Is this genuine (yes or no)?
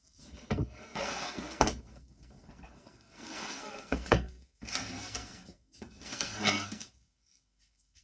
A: no